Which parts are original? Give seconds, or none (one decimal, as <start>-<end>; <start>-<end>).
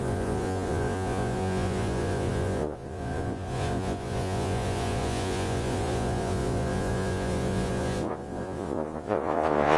none